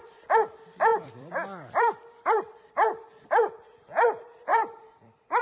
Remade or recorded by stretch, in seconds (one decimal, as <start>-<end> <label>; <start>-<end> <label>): 0.0-0.9 recorded; 0.9-3.5 remade; 3.5-4.5 recorded; 4.5-5.4 remade